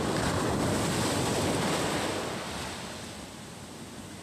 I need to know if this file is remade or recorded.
recorded